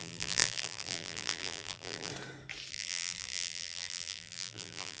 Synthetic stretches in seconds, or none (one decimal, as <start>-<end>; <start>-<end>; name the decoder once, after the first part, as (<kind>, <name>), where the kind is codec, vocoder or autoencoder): 0.0-2.1 (vocoder, BigVGAN v2); 2.7-5.0